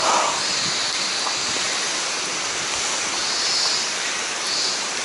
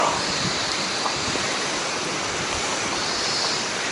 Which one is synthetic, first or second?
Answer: second